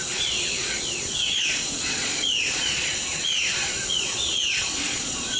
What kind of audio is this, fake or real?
fake